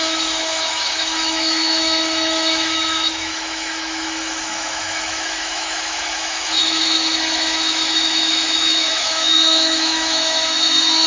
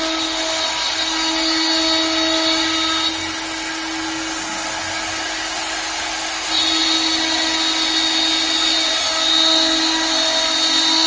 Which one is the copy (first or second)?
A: first